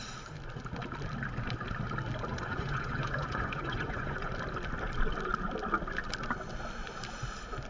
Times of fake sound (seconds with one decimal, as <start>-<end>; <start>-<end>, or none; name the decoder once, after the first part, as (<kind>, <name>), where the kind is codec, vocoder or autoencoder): 2.3-4.3 (vocoder, Vocos)